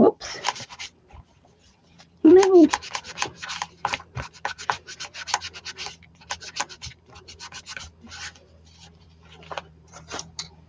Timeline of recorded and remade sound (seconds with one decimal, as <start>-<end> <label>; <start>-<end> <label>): 0.0-2.3 remade; 2.3-3.5 recorded; 3.5-10.7 remade